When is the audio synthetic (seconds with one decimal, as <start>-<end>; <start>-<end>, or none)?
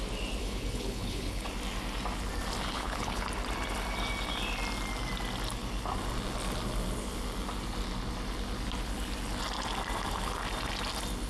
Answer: 0.4-1.5; 2.7-3.3